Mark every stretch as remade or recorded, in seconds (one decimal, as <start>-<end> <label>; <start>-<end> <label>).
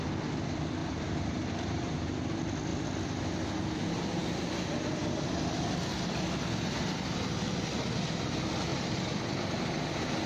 0.0-0.8 recorded; 0.8-2.1 remade; 2.1-8.7 recorded; 8.7-10.3 remade